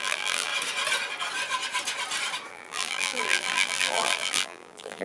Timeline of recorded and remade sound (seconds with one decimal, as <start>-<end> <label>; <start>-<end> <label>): 0.0-0.5 remade; 0.5-2.5 recorded; 2.5-5.0 remade